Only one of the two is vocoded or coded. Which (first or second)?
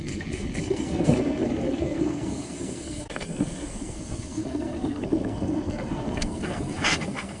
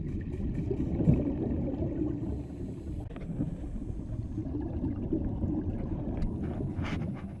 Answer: first